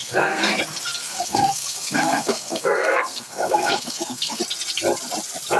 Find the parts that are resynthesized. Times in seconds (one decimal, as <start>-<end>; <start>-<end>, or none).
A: 0.0-0.6; 1.0-4.4